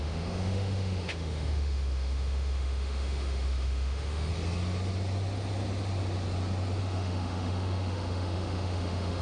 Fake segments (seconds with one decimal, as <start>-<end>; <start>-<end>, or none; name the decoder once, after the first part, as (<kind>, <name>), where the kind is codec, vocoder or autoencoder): 0.0-4.3 (autoencoder, DAC-VAE); 6.8-9.2

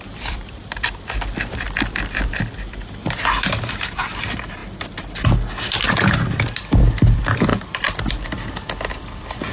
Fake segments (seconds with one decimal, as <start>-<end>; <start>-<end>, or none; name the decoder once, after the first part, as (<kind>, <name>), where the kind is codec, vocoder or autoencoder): 0.0-3.0 (vocoder, BigVGAN v2); 3.7-4.6; 5.5-9.5

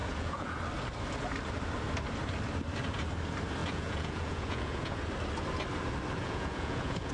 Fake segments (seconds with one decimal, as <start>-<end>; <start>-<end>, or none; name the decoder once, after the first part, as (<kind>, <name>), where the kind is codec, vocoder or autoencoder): 0.0-0.6 (vocoder, Vocos); 3.6-5.0; 6.2-7.1

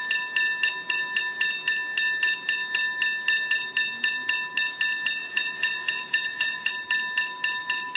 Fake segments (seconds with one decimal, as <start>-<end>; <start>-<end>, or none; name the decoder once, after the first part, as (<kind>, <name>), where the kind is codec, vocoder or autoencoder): 5.2-6.7 (vocoder, Vocos)